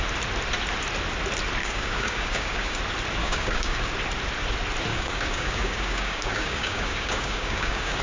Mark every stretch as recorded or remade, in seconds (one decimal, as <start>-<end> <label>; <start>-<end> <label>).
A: 0.0-1.6 recorded; 1.6-2.8 remade; 2.8-3.2 recorded; 3.2-3.9 remade; 3.9-4.9 recorded; 4.9-8.0 remade